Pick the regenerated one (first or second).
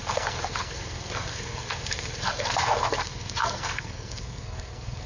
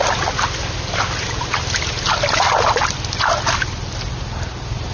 first